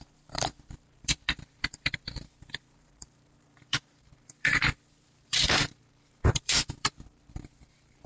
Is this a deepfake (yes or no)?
yes